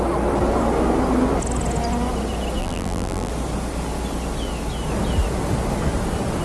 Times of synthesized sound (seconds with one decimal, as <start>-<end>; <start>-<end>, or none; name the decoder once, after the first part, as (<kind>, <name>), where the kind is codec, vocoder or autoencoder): 2.6-3.3 (vocoder, BigVGAN v2)